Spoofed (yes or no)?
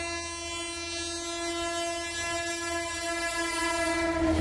no